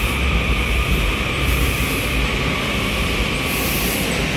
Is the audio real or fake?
real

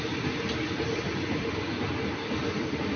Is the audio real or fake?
real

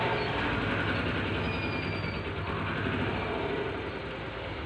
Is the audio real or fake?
real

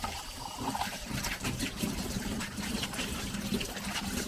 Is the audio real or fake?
fake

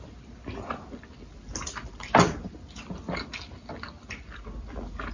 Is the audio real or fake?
real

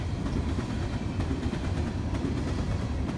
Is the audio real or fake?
fake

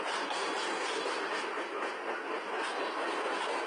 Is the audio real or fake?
real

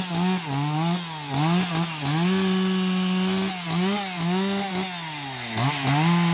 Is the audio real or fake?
real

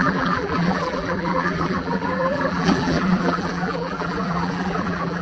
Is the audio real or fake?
fake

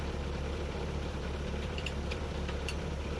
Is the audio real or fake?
fake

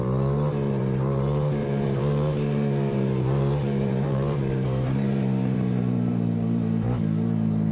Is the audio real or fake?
fake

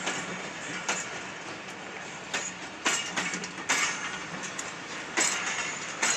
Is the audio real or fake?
fake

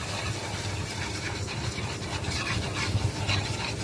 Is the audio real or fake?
real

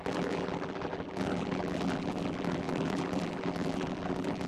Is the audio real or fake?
fake